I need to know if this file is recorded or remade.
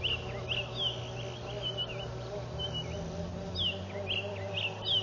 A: recorded